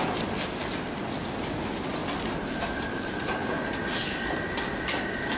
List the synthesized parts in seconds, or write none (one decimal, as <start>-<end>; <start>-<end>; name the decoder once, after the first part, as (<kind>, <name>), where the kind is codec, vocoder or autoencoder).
none